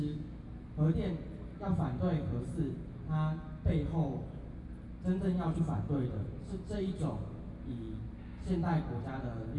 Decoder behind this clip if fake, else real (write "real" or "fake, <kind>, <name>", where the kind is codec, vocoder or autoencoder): real